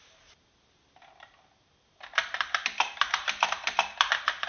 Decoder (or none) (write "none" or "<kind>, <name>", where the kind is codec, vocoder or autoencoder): none